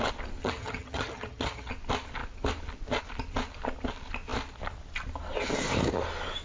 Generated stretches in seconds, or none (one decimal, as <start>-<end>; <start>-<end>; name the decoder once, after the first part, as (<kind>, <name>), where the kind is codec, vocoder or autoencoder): 0.4-1.7 (vocoder, HiFi-GAN)